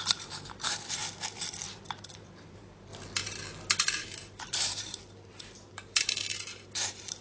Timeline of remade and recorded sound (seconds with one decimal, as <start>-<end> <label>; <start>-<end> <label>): 0.0-1.0 remade; 1.0-2.2 recorded; 2.2-2.9 remade; 2.9-3.8 recorded; 3.8-5.0 remade; 5.0-5.7 recorded; 5.7-7.2 remade